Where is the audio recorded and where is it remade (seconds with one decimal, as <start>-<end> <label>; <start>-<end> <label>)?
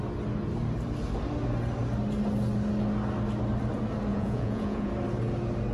0.0-4.1 recorded; 4.1-4.9 remade; 4.9-5.7 recorded